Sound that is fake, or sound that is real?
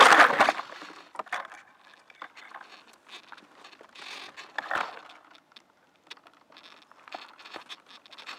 real